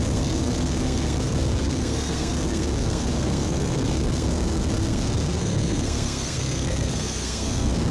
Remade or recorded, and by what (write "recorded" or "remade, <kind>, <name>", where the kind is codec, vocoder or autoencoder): remade, codec, SNAC